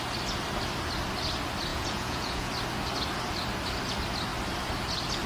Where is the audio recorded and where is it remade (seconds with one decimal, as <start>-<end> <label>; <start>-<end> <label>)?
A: 0.0-1.7 recorded; 1.7-2.5 remade; 2.5-5.3 recorded